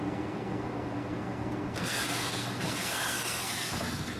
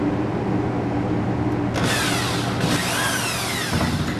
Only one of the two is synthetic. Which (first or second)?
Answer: first